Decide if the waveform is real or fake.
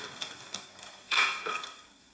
fake